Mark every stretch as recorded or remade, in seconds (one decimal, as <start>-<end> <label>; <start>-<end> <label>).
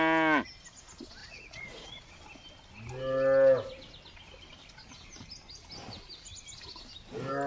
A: 0.0-1.2 recorded; 1.2-2.1 remade; 2.1-7.5 recorded